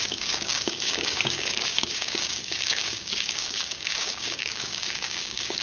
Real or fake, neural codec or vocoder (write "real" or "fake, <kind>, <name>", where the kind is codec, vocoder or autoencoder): fake, codec, DAC